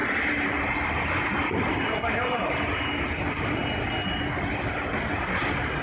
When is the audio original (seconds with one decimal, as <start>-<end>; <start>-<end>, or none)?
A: 2.5-5.8